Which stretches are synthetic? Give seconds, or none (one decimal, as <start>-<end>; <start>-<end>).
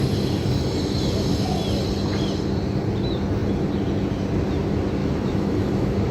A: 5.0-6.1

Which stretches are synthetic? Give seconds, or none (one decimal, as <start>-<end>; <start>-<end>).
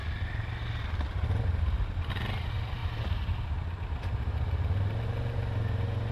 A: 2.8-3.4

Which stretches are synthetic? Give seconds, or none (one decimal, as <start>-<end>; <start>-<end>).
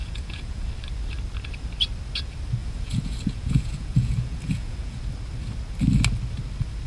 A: 0.0-0.7; 2.6-5.0